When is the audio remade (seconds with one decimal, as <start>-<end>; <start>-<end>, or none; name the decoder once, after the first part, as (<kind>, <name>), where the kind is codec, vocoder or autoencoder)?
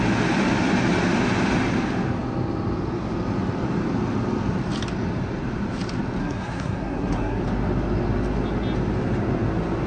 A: 6.2-7.4 (codec, SNAC)